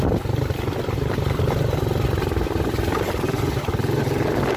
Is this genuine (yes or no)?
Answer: yes